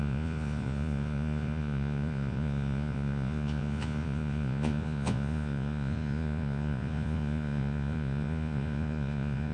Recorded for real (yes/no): no